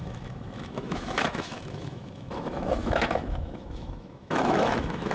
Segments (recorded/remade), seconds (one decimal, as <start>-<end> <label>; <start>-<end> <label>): 0.0-5.1 remade